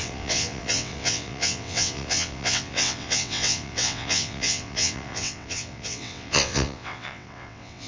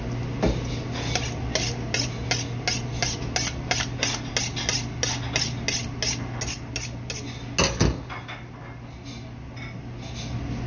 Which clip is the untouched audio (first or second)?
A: second